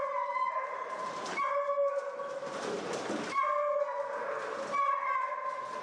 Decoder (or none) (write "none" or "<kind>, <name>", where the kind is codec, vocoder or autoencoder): none